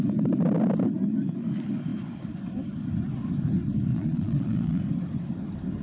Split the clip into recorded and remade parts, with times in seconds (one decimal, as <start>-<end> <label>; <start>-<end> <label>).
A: 0.0-3.9 recorded; 3.9-4.8 remade; 4.8-5.8 recorded